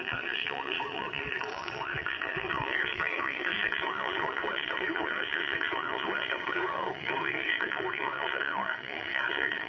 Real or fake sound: fake